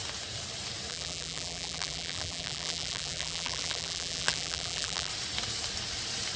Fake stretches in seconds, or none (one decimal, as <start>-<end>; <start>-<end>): 0.9-5.1